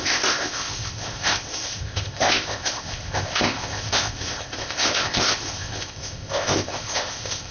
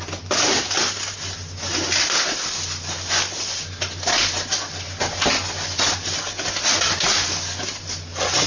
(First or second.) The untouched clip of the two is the second